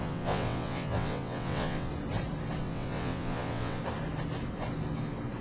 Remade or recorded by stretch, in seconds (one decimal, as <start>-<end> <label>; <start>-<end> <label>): 0.0-1.9 remade; 1.9-2.6 recorded; 2.6-3.8 remade; 3.8-5.4 recorded

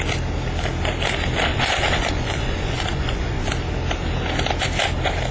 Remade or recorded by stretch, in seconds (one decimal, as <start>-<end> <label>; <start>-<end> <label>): 0.0-1.5 recorded; 1.5-3.5 remade; 3.5-5.3 recorded

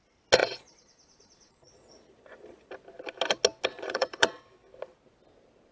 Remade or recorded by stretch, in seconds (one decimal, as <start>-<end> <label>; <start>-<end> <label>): 0.0-0.4 recorded; 0.4-2.7 remade; 2.7-3.7 recorded; 3.7-4.4 remade; 4.4-5.7 recorded